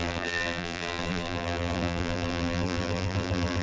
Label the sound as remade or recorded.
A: remade